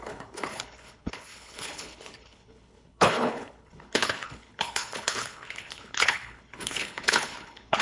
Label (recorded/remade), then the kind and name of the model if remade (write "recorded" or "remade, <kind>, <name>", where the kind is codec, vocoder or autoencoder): remade, codec, HILCodec